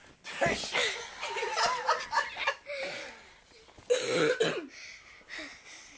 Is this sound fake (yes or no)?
no